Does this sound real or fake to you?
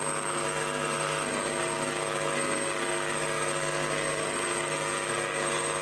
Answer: fake